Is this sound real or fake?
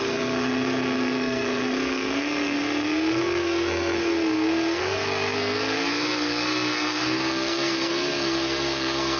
fake